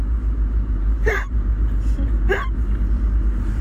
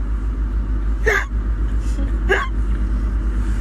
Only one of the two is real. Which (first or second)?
second